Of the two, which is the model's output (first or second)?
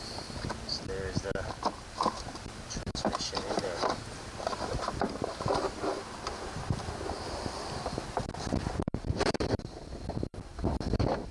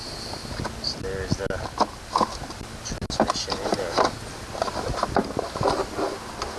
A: first